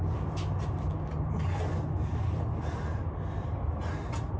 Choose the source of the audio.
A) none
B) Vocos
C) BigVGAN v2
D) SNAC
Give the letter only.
A